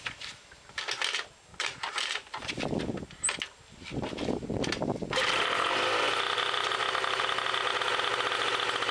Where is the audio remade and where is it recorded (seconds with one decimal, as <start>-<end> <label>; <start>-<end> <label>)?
0.0-1.5 recorded; 1.5-2.5 remade; 2.5-8.9 recorded